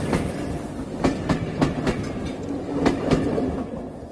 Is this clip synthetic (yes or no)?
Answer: no